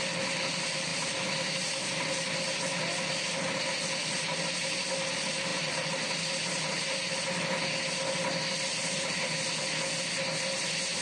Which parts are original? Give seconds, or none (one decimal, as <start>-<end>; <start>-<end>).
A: 0.0-11.0